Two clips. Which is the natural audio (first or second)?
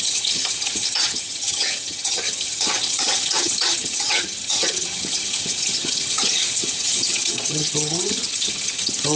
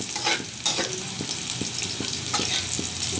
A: second